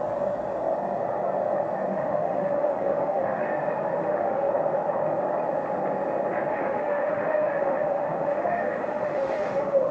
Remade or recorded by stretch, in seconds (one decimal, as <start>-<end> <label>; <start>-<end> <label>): 0.0-1.9 recorded; 1.9-3.4 remade; 3.4-4.0 recorded; 4.0-4.5 remade; 4.5-6.5 recorded; 6.5-9.9 remade